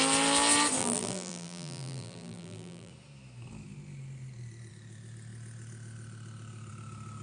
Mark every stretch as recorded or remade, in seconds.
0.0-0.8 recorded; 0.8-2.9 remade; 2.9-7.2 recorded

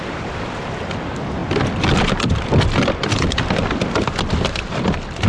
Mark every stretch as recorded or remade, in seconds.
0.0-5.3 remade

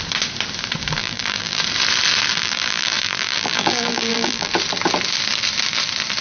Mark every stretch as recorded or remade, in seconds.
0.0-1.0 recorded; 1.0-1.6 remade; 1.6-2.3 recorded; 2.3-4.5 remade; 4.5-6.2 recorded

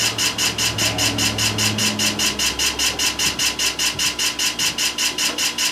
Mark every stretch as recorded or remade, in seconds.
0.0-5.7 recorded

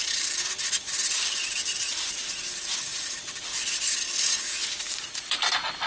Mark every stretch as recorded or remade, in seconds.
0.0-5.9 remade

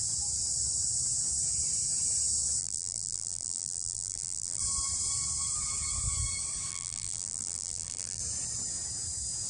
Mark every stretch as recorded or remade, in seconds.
0.0-2.6 recorded; 2.6-4.6 remade; 4.6-6.7 recorded; 6.7-8.2 remade; 8.2-9.5 recorded

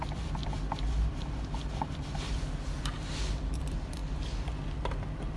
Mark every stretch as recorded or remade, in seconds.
0.0-0.4 remade; 0.4-3.6 recorded; 3.6-4.0 remade; 4.0-4.9 recorded; 4.9-5.4 remade